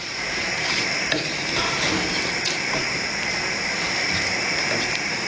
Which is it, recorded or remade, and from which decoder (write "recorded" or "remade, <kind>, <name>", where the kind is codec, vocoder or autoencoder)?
remade, vocoder, BigVGAN v2